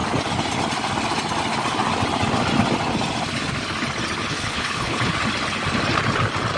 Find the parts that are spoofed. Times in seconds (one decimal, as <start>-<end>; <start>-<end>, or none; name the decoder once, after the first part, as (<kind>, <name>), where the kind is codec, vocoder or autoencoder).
4.3-5.1 (codec, HILCodec)